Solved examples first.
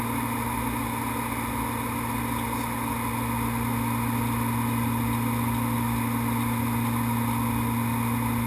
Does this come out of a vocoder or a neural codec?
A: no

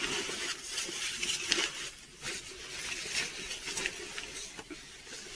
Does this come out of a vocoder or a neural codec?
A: yes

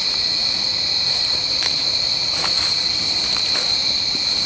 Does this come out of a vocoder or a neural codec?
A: yes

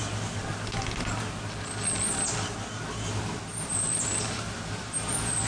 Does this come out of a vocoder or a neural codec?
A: no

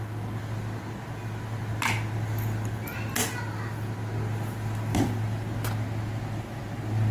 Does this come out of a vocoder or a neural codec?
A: no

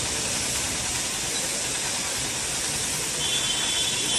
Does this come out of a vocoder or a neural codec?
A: yes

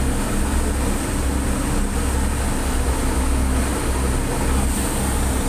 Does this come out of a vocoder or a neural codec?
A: no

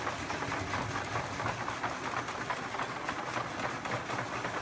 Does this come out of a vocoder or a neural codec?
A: no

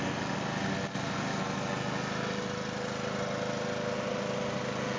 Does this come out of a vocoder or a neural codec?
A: no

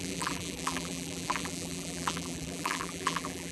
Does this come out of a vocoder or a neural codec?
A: yes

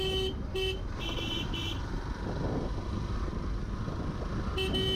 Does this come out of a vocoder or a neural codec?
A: no